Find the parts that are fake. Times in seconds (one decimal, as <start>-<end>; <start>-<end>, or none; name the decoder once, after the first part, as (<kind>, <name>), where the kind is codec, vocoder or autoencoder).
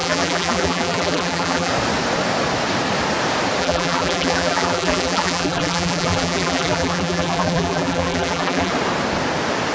0.0-1.7 (vocoder, BigVGAN v2); 3.6-8.7